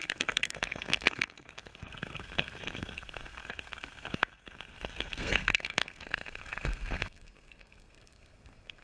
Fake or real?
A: fake